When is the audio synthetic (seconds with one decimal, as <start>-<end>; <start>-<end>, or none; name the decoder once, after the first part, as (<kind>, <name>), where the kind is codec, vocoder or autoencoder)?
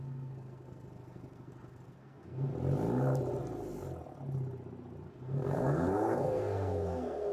0.0-2.5 (codec, SNAC); 5.1-7.3